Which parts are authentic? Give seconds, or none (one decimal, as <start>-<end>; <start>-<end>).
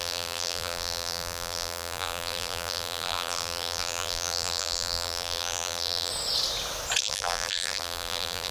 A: 6.1-7.0